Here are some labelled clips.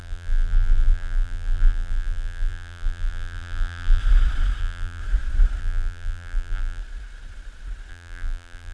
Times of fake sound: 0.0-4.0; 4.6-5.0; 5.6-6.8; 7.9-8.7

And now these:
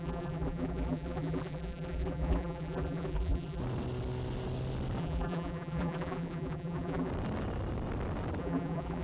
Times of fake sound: 0.0-3.6; 5.0-7.1; 8.4-9.0

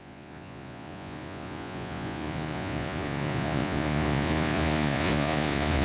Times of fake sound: 0.0-5.8

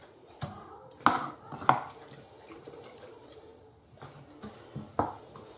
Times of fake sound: 0.0-0.7

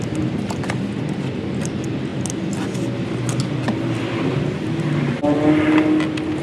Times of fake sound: none